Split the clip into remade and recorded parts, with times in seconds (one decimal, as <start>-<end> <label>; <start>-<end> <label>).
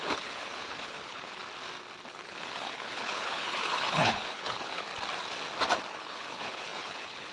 0.0-1.4 remade; 1.4-2.1 recorded; 2.1-4.9 remade; 4.9-5.9 recorded; 5.9-7.3 remade